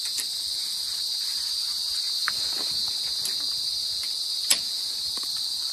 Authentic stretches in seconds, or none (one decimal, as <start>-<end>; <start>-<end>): 0.0-5.7